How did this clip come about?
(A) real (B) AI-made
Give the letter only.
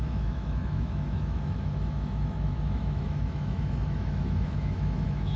B